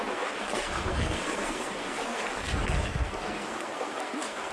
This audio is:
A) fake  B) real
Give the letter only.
A